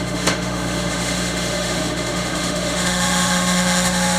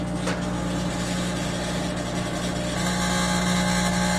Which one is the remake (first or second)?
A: first